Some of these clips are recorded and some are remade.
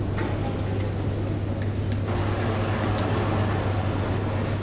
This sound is recorded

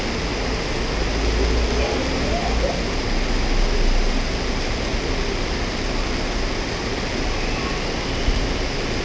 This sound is recorded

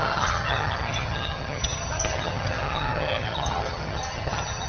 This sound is remade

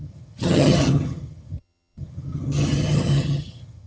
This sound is remade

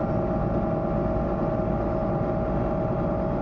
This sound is recorded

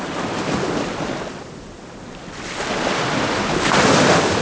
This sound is recorded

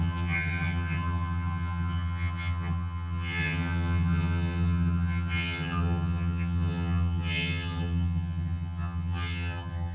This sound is remade